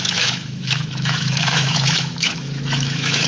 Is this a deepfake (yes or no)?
yes